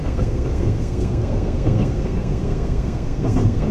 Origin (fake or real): fake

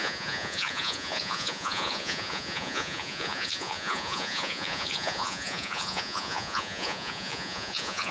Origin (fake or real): fake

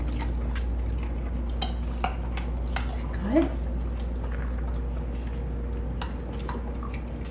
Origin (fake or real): real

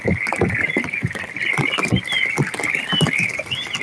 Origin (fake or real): real